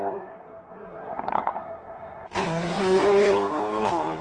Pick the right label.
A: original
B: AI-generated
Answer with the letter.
B